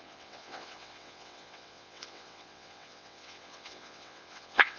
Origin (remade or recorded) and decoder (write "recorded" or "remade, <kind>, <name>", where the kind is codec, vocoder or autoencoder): remade, vocoder, WaveNeXt